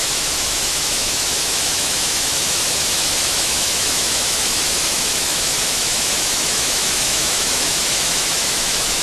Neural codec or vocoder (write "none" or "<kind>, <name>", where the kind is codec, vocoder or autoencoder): autoencoder, DAC-VAE